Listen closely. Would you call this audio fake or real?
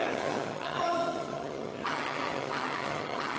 fake